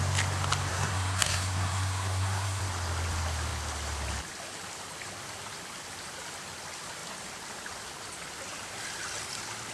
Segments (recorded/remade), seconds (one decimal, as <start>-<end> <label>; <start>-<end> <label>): 0.0-0.7 recorded; 0.7-2.6 remade; 2.6-9.7 recorded

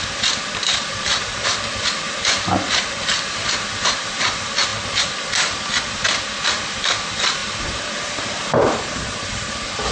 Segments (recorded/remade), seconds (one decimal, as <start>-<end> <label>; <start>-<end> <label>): 0.0-9.9 recorded